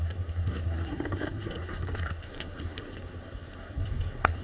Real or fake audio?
fake